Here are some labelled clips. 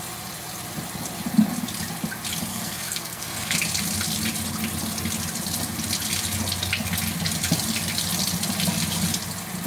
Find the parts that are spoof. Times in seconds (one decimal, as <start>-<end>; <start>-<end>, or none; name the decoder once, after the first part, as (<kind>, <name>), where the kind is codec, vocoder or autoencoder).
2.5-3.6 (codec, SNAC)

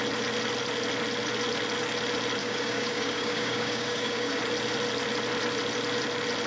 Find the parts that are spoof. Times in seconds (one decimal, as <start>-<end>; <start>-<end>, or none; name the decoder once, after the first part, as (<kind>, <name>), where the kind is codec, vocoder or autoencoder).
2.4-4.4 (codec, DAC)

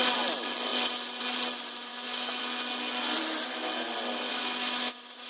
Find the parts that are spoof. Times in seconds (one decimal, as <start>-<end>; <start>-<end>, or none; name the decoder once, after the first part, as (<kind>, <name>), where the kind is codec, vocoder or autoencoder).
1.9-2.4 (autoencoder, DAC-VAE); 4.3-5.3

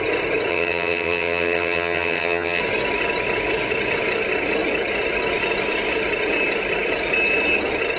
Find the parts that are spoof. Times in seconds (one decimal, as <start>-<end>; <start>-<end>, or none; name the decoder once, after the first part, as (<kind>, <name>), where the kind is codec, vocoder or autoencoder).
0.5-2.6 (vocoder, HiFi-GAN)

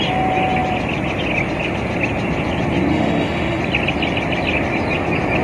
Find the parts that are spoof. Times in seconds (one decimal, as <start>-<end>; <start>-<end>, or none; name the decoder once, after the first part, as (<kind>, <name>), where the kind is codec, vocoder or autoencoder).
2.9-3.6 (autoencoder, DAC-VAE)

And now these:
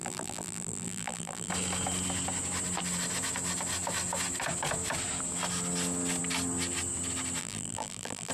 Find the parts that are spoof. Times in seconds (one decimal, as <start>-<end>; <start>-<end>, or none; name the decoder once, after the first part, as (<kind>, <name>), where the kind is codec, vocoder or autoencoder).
0.0-1.5 (vocoder, BigVGAN v2); 7.4-8.3